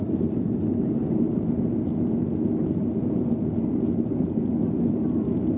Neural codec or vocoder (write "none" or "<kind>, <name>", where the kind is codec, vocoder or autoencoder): none